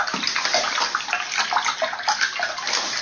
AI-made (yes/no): no